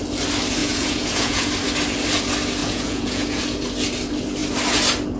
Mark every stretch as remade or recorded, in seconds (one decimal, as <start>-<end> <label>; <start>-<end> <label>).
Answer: 0.0-0.6 recorded; 0.6-1.5 remade; 1.5-2.6 recorded; 2.6-3.4 remade; 3.4-5.2 recorded